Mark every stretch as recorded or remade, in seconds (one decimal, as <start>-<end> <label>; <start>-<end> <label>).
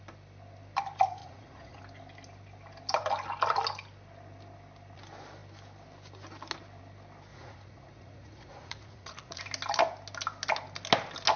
0.0-1.2 recorded; 1.2-1.8 remade; 1.8-7.3 recorded; 7.3-9.4 remade; 9.4-11.4 recorded